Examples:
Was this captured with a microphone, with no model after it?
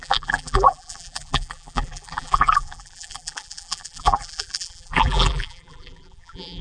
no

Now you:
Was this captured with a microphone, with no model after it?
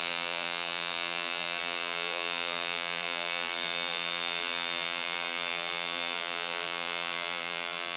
no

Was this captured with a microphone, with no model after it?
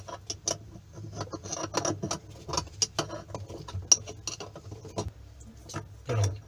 yes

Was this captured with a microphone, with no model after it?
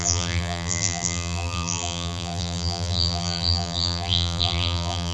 no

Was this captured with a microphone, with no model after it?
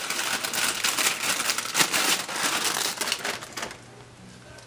yes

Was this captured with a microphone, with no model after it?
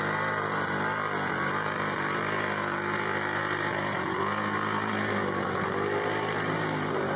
no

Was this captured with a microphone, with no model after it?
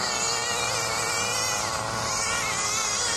yes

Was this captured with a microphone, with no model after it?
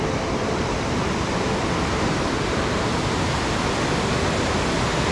yes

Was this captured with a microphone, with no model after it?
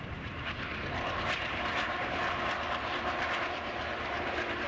no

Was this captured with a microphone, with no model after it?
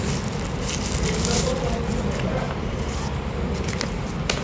yes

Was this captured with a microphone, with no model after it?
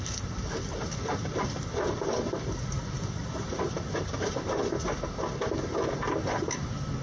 yes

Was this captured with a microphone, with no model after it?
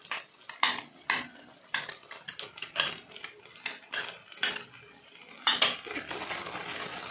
yes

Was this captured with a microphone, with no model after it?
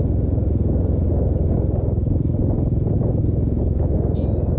yes